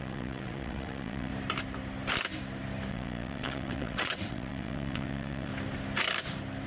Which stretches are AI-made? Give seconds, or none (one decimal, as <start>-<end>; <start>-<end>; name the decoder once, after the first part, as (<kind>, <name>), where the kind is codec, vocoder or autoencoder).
0.0-1.3 (vocoder, WaveNeXt); 2.9-5.5